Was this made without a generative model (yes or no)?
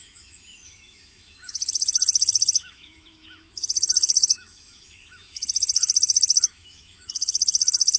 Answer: no